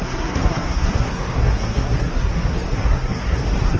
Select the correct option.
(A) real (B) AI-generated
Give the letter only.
B